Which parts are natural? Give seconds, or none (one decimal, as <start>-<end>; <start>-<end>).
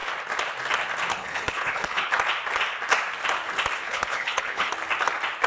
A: 0.0-1.1; 2.1-3.8; 4.7-5.5